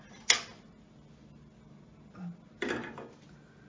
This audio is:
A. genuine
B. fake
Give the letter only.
A